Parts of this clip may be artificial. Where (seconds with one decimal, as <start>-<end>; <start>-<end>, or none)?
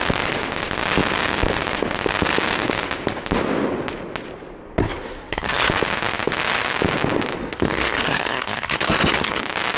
4.8-5.7; 7.4-9.4